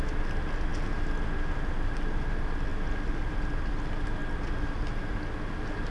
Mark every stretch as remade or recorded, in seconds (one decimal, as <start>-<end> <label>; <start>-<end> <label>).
0.0-5.9 recorded